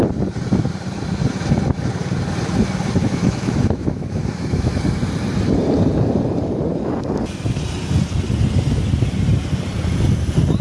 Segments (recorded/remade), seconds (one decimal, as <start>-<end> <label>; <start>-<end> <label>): 0.0-3.0 recorded; 3.0-4.8 remade; 4.8-10.6 recorded